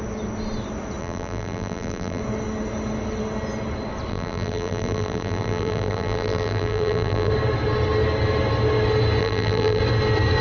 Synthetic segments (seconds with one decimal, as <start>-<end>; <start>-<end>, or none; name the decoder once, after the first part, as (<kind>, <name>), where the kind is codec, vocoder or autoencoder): 1.0-2.2 (vocoder, BigVGAN v2); 4.1-7.3; 9.2-9.8